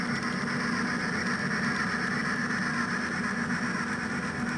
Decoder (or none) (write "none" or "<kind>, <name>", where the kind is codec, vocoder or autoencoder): none